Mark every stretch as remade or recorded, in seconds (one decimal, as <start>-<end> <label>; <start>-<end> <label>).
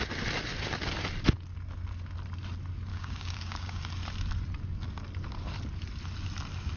0.0-2.9 recorded; 2.9-3.8 remade; 3.8-6.8 recorded